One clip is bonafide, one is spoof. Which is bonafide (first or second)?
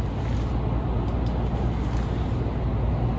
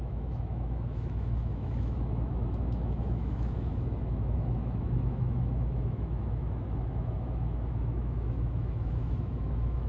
first